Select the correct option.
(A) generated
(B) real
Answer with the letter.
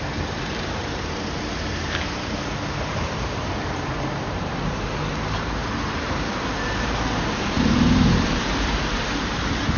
A